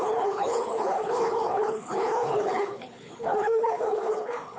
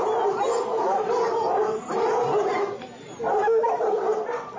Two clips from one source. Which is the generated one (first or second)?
first